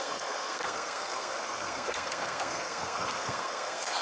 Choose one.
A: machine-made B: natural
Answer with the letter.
A